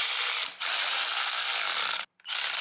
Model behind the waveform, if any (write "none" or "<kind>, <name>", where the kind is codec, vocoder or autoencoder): vocoder, BigVGAN v2